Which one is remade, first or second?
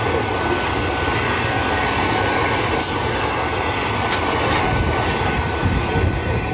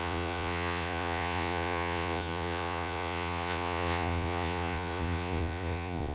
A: second